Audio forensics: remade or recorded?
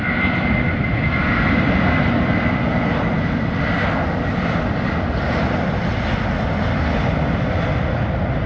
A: recorded